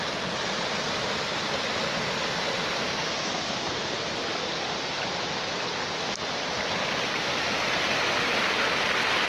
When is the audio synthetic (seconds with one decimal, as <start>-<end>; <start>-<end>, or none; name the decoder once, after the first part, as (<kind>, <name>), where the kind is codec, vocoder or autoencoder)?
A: none